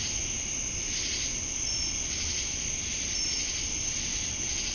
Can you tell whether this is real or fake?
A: real